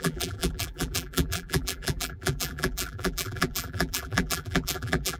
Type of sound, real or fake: fake